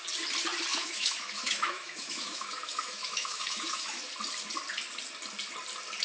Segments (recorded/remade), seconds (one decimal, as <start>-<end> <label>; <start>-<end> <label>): 0.0-0.7 recorded; 0.7-4.0 remade; 4.0-6.0 recorded